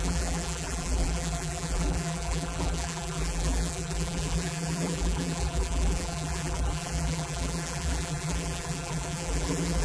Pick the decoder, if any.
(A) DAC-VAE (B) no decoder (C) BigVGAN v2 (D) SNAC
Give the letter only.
C